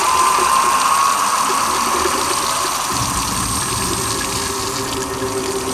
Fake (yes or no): no